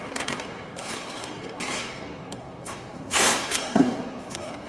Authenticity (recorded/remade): remade